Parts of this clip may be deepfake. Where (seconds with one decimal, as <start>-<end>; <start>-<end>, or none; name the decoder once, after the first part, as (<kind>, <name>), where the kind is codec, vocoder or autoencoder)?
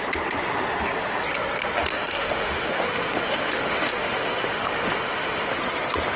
1.9-5.6 (autoencoder, DAC-VAE)